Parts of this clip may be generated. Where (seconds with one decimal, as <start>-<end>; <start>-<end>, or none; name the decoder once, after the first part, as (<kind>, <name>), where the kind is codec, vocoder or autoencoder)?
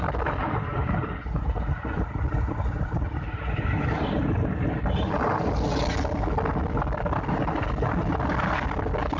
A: none